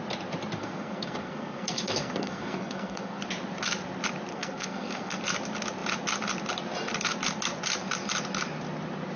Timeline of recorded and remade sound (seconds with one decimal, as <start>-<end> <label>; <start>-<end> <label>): 0.0-0.6 recorded; 0.6-3.2 remade; 3.2-4.3 recorded; 4.3-5.2 remade; 5.2-9.2 recorded